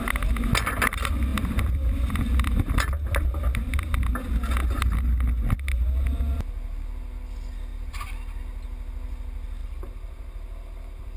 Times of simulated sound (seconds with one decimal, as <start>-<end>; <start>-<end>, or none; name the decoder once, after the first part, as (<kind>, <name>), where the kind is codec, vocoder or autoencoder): 1.3-2.9 (vocoder, BigVGAN v2); 7.7-8.4; 9.6-11.2